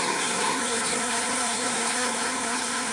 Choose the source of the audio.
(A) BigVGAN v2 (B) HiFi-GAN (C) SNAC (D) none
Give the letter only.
C